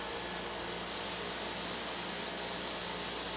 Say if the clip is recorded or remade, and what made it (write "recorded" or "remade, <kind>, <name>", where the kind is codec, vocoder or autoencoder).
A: recorded